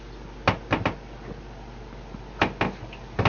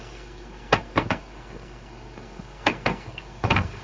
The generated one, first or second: second